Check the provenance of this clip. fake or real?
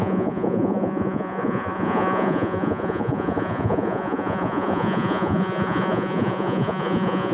fake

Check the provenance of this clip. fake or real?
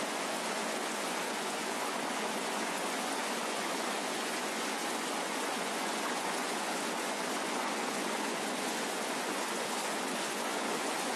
fake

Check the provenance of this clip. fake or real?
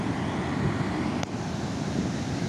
real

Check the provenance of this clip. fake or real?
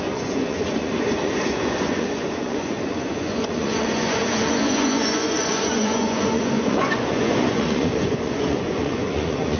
fake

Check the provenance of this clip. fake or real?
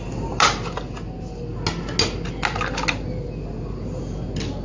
real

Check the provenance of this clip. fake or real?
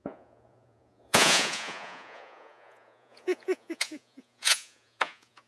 fake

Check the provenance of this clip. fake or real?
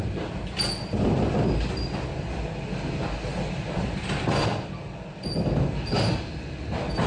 real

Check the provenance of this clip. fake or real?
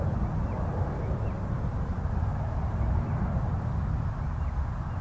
real